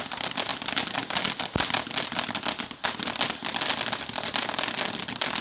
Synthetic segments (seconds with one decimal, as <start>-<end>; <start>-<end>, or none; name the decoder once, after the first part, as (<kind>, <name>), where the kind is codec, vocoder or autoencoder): none